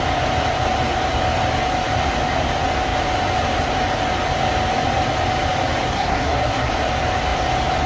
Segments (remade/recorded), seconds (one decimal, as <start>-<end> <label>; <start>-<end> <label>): 0.0-5.9 recorded; 5.9-6.7 remade; 6.7-7.9 recorded